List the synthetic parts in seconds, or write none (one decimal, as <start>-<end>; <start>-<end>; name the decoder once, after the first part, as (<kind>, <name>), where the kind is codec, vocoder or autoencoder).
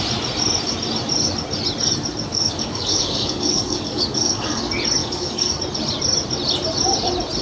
2.3-4.6 (codec, DAC); 5.0-5.6